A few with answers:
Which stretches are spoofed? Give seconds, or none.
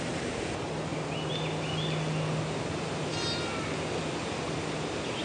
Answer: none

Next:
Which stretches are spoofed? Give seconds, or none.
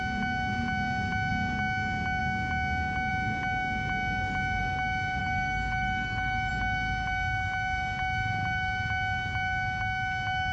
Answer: 5.2-6.5 (autoencoder, DAC-VAE)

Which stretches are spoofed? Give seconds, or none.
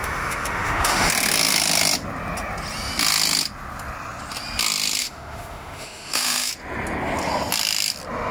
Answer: 0.0-1.1 (autoencoder, DAC-VAE); 5.0-6.5